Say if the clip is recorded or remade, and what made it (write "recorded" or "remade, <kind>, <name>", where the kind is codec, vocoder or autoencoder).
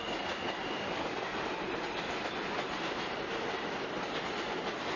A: recorded